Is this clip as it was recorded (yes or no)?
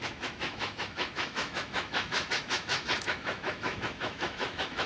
no